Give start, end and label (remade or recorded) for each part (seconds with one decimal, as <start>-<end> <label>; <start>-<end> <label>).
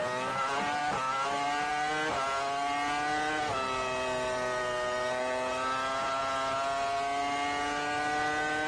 0.0-8.7 recorded